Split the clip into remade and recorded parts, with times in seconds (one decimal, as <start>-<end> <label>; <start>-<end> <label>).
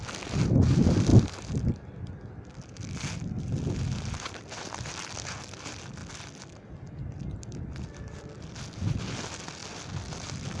0.0-10.6 recorded